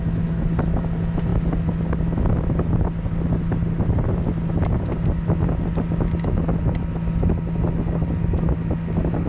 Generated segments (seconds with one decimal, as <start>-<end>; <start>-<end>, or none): none